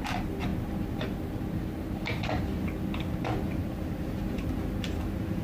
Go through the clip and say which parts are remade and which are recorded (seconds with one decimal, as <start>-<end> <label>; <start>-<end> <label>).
0.0-3.6 recorded; 3.6-5.4 remade